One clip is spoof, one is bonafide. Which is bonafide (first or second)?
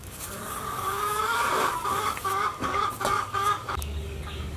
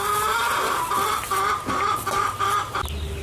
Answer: second